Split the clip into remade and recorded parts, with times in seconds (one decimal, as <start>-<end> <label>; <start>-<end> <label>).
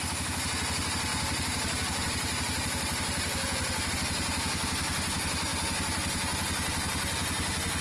0.0-1.1 recorded; 1.1-3.9 remade; 3.9-7.8 recorded